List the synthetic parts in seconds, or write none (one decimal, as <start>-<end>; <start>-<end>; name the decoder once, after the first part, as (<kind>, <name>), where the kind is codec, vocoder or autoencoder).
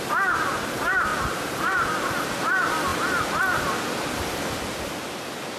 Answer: 1.1-2.1 (vocoder, BigVGAN v2)